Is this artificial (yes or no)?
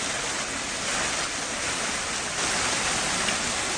no